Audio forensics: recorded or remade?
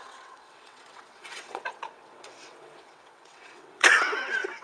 remade